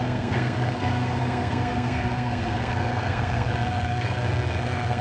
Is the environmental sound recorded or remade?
remade